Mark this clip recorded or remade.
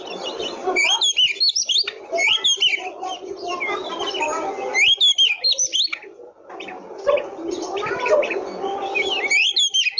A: recorded